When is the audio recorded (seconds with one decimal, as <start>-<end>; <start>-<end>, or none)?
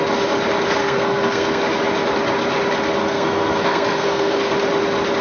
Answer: 0.0-0.8; 1.6-3.0; 4.5-5.2